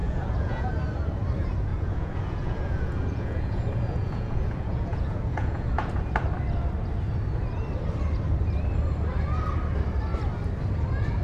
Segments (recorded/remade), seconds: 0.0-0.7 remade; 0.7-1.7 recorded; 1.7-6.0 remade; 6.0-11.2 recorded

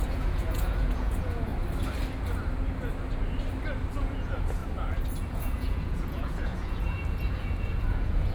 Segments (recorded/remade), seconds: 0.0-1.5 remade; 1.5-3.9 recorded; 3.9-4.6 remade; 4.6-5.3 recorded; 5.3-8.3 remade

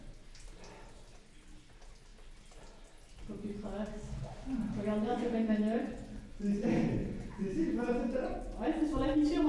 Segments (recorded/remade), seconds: 0.0-5.1 recorded; 5.1-6.4 remade; 6.4-7.0 recorded; 7.0-8.4 remade; 8.4-9.5 recorded